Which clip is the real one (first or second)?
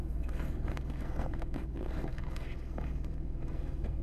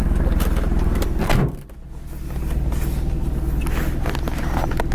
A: second